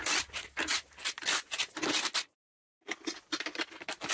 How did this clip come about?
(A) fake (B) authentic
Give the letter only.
B